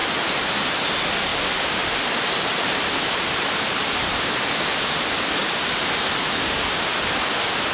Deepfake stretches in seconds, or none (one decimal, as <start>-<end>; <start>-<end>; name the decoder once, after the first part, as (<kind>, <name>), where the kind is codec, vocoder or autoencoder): none